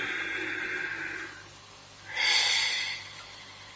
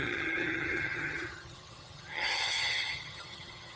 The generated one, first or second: second